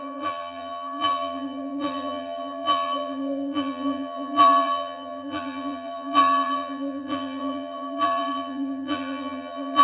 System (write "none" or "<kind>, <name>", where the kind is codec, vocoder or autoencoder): vocoder, BigVGAN v2